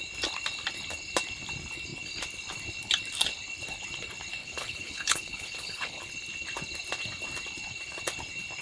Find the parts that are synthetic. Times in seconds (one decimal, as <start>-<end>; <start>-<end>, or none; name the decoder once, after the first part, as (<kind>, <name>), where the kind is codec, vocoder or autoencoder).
4.4-6.1 (codec, HILCodec)